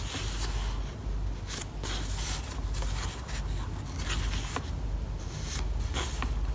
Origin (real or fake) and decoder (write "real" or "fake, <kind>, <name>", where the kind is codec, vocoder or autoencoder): real